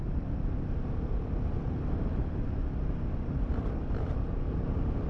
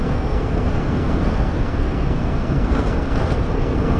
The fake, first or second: second